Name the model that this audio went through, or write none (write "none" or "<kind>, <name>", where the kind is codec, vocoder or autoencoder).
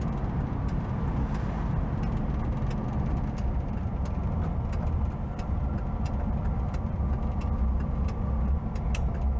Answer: none